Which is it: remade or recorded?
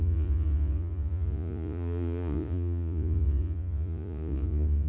remade